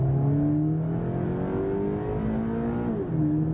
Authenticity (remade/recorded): recorded